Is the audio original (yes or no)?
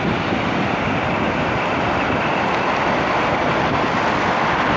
yes